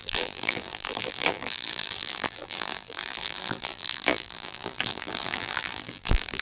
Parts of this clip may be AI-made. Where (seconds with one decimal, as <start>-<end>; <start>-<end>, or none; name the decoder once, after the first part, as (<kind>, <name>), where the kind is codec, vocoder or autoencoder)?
0.0-6.4 (vocoder, BigVGAN v2)